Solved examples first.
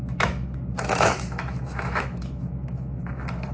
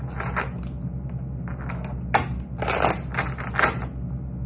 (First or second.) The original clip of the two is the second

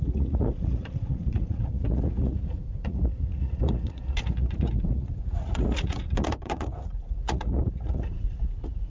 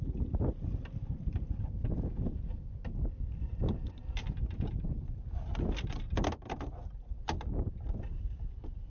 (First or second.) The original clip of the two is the second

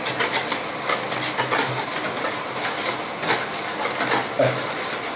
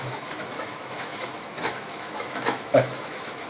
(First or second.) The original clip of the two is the first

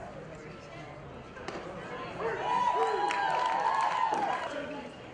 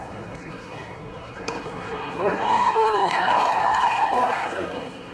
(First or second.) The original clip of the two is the first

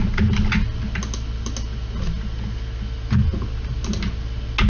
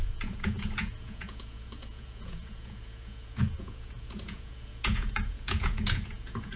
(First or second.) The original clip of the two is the first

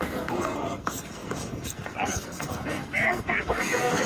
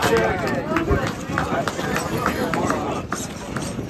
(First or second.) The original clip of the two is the second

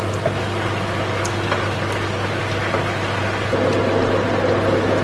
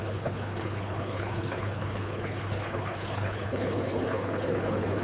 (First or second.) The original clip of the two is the first